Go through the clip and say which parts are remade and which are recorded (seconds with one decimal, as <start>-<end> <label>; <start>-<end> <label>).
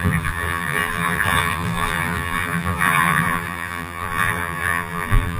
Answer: 0.0-5.4 remade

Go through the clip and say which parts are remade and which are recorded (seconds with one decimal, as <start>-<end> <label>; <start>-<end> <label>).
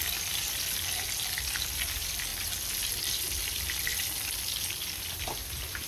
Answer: 0.0-2.3 remade; 2.3-2.9 recorded; 2.9-5.9 remade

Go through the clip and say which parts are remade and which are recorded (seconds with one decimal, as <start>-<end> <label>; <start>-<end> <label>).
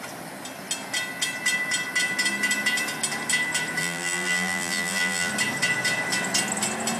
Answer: 0.0-3.8 recorded; 3.8-5.3 remade; 5.3-7.0 recorded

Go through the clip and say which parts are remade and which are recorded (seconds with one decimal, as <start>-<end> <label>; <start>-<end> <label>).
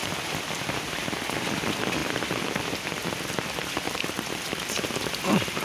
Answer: 0.0-0.9 recorded; 0.9-2.0 remade; 2.0-3.3 recorded; 3.3-5.6 remade